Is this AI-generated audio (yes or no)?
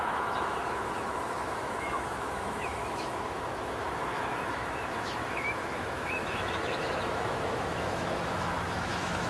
yes